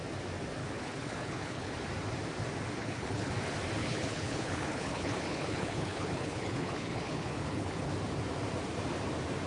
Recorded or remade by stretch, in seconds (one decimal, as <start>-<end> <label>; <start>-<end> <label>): 0.0-0.6 recorded; 0.6-1.7 remade; 1.7-2.8 recorded; 2.8-3.3 remade; 3.3-3.8 recorded; 3.8-7.9 remade; 7.9-9.5 recorded

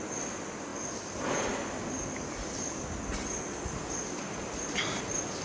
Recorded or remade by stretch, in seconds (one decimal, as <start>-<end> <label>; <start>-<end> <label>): 0.0-5.4 recorded